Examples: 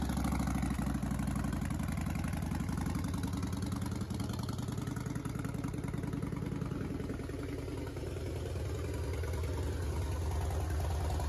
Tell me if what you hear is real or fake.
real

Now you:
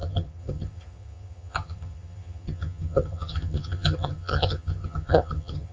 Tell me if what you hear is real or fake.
fake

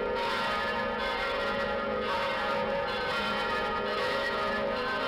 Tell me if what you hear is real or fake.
fake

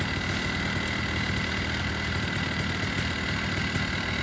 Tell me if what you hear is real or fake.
real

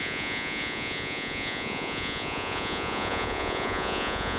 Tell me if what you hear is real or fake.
fake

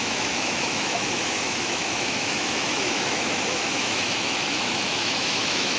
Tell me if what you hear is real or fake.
fake